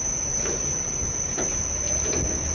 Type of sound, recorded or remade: remade